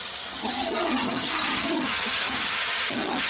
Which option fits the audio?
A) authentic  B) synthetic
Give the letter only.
B